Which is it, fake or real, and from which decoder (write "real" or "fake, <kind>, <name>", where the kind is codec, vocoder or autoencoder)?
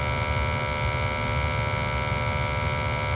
real